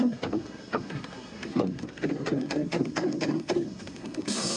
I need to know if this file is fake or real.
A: fake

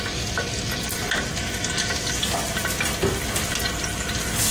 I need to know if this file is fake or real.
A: real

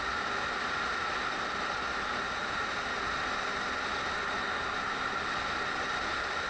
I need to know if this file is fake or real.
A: real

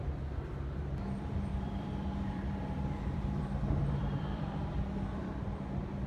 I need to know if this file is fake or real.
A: fake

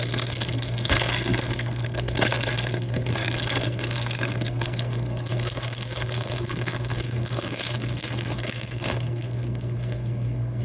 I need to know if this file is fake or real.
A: fake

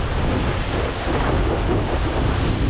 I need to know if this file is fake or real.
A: real